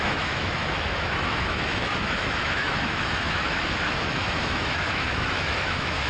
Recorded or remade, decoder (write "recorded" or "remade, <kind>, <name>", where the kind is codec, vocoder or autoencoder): remade, autoencoder, DAC-VAE